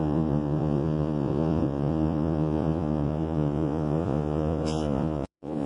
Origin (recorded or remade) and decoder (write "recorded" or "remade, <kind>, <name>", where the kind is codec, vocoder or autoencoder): remade, vocoder, Vocos